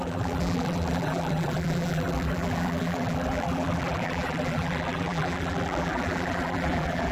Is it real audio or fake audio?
fake